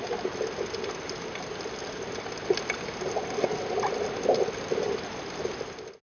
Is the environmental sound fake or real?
real